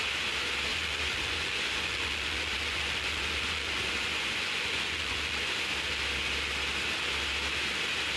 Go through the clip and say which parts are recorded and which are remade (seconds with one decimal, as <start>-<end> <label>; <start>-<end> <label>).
0.0-0.7 recorded; 0.7-5.5 remade; 5.5-8.2 recorded